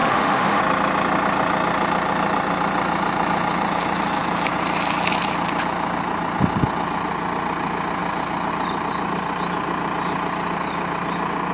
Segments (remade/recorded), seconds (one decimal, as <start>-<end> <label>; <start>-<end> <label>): 0.0-0.6 remade; 0.6-11.5 recorded